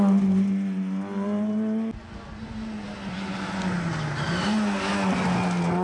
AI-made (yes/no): no